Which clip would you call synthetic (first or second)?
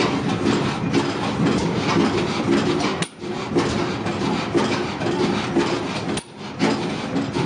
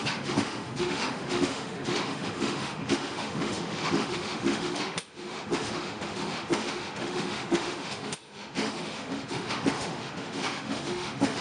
second